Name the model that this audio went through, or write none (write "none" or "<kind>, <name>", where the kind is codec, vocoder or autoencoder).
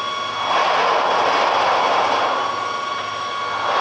none